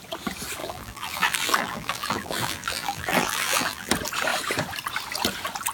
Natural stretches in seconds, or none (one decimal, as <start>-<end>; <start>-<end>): 0.0-0.6; 3.9-5.7